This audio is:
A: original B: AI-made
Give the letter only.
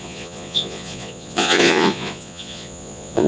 B